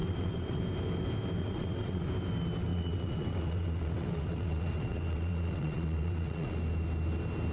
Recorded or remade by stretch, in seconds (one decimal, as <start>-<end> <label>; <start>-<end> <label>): 0.0-0.6 remade; 0.6-1.4 recorded; 1.4-2.1 remade; 2.1-2.7 recorded; 2.7-6.6 remade; 6.6-7.5 recorded